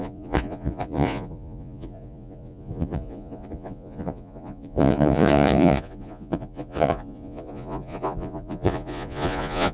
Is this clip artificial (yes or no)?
yes